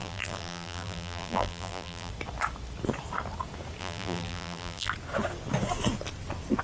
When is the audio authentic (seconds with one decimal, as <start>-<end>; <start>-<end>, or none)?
2.1-3.8; 4.9-6.6